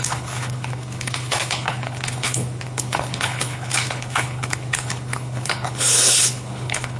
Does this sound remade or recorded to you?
remade